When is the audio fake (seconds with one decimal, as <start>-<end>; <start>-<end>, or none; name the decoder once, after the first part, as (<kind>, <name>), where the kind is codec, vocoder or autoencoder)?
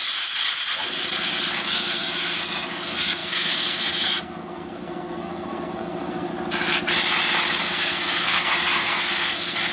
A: 1.5-6.3 (codec, SNAC); 7.6-9.7